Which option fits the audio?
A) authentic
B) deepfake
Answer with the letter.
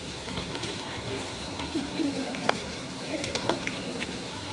B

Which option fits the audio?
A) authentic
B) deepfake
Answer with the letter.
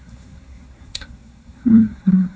B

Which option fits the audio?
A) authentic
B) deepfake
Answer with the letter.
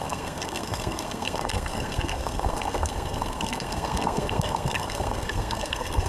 B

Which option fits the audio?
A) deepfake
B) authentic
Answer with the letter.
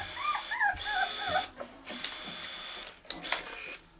B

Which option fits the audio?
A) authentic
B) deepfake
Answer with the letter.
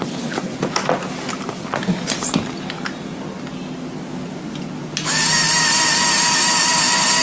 A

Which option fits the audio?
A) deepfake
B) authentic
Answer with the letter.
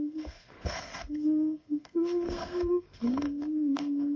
A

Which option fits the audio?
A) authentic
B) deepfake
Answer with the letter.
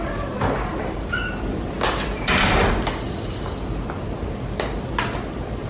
A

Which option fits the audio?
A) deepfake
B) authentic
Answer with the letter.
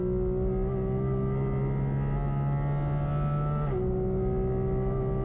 B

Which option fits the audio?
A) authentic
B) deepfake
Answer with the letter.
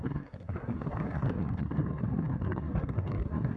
B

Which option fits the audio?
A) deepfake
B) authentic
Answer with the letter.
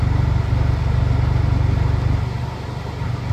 B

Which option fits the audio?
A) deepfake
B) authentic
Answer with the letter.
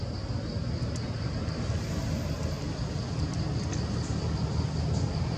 B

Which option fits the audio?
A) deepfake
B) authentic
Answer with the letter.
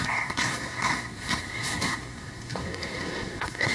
A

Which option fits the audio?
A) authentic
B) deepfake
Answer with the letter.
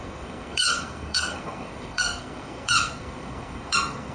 B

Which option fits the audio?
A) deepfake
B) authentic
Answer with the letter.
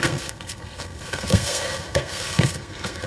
A